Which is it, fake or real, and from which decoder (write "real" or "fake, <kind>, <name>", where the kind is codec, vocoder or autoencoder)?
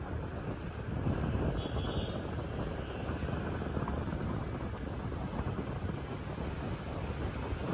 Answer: real